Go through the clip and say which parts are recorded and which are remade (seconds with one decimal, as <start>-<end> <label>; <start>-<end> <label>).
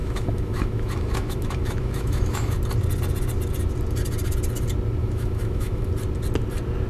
0.0-2.6 remade; 2.6-5.0 recorded; 5.0-5.9 remade; 5.9-6.9 recorded